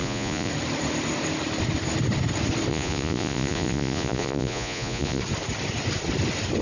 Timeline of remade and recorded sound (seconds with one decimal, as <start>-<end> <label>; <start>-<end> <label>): 0.0-0.5 remade; 0.5-2.7 recorded; 2.7-5.2 remade; 5.2-6.6 recorded